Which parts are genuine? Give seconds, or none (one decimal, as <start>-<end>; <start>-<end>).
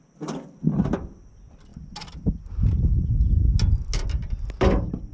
0.0-5.1